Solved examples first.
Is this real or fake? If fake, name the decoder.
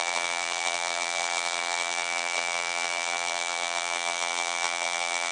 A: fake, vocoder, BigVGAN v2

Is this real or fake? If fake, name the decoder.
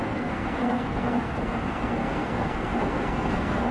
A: fake, codec, SNAC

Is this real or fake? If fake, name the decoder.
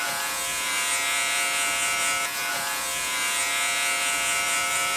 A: fake, vocoder, Vocos